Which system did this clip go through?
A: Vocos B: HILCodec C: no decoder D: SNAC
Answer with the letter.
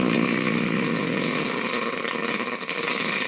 C